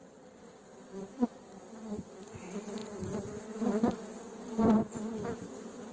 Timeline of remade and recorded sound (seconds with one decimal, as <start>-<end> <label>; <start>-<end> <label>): 0.0-5.9 remade